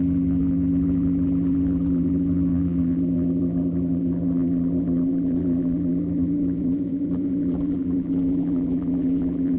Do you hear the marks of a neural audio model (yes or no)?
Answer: yes